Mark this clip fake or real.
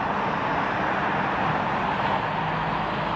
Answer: real